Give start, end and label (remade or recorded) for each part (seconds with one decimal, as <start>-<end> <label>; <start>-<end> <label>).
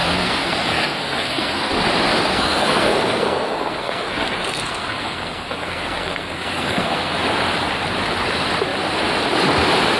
0.0-1.7 remade; 1.7-2.3 recorded; 2.3-7.2 remade; 7.2-10.0 recorded